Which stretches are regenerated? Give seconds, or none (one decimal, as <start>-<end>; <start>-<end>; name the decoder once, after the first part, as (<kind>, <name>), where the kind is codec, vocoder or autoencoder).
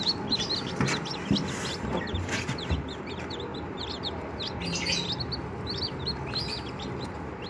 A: none